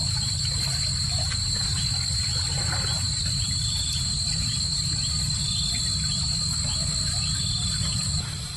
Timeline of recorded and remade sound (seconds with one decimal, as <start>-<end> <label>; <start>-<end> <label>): 0.0-8.6 recorded